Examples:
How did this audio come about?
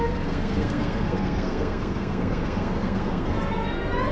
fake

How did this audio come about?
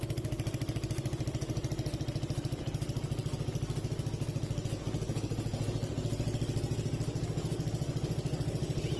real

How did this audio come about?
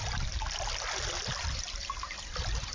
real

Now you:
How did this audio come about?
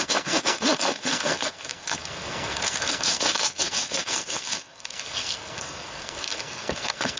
fake